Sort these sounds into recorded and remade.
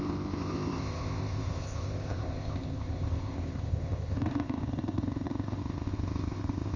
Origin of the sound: remade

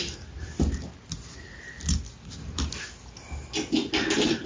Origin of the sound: recorded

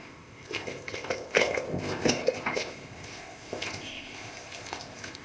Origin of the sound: remade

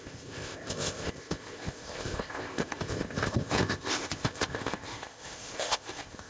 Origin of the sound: remade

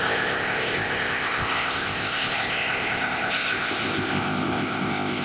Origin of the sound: remade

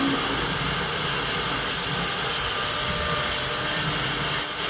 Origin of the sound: recorded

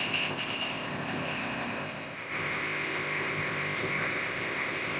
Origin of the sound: remade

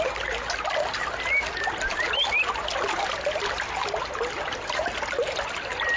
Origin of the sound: recorded